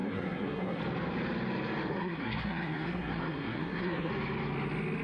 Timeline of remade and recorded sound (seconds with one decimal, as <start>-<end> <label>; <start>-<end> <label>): 0.0-0.8 remade; 0.8-1.9 recorded; 1.9-4.1 remade; 4.1-5.0 recorded